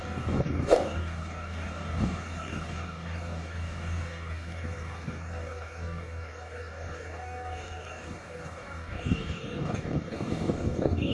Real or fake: fake